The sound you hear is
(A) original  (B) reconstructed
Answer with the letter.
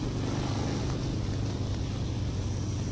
A